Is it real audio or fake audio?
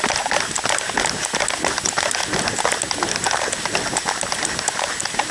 real